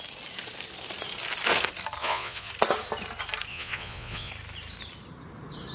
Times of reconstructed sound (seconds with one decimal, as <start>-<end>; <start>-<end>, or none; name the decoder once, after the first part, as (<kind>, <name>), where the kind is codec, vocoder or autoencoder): 2.0-2.5 (vocoder, Vocos); 3.5-4.3